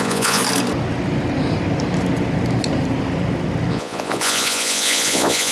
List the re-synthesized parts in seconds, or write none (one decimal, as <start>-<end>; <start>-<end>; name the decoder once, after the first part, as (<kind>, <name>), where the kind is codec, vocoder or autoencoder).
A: 0.0-0.4 (vocoder, Vocos); 3.7-5.5

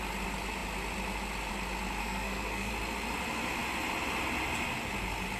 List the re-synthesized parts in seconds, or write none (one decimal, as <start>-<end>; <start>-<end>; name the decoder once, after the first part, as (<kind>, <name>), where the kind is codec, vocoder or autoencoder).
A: 2.0-2.7 (codec, SNAC)